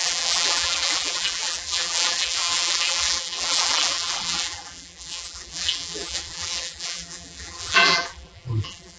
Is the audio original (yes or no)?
no